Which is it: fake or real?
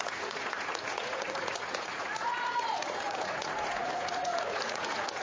fake